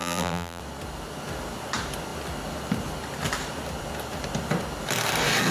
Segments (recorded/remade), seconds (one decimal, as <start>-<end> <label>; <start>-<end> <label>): 0.0-0.6 remade; 0.6-5.5 recorded

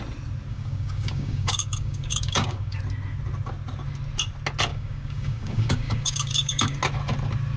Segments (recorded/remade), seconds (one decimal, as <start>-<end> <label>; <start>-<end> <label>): 0.0-0.5 recorded; 0.5-2.8 remade; 2.8-4.7 recorded; 4.7-6.8 remade; 6.8-7.6 recorded

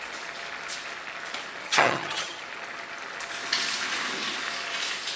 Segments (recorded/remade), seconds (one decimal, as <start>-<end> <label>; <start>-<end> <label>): 0.0-1.6 recorded; 1.6-2.4 remade; 2.4-5.2 recorded

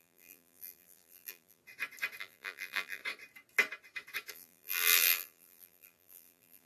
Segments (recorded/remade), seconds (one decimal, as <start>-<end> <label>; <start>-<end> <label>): 0.0-1.6 remade; 1.6-2.2 recorded; 2.2-3.0 remade; 3.0-4.3 recorded; 4.3-6.7 remade

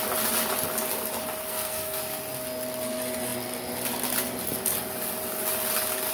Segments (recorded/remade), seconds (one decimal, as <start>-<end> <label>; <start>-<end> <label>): 0.0-1.4 recorded; 1.4-2.0 remade; 2.0-6.1 recorded

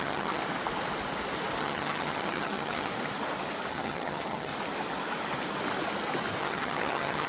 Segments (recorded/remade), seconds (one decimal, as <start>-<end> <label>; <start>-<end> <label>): 0.0-0.4 remade; 0.4-1.6 recorded; 1.6-2.9 remade; 2.9-3.7 recorded; 3.7-4.5 remade; 4.5-6.4 recorded; 6.4-7.3 remade

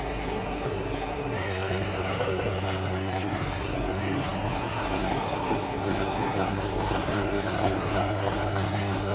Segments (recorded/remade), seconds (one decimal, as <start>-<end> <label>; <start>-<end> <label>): 0.0-9.1 remade